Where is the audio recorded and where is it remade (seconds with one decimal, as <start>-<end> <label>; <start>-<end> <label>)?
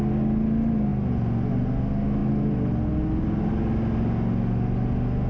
0.0-5.3 recorded